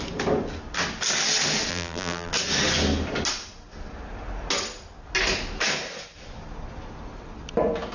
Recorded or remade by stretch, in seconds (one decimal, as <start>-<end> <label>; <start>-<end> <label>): 0.0-1.7 recorded; 1.7-2.3 remade; 2.3-7.9 recorded